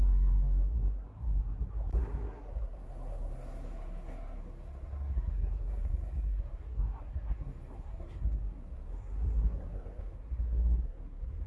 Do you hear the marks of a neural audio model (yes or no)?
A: yes